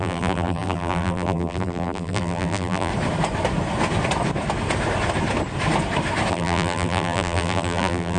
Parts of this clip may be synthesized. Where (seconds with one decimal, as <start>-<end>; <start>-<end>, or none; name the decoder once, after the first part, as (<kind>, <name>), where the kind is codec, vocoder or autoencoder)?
0.0-2.9 (vocoder, BigVGAN v2); 6.3-8.2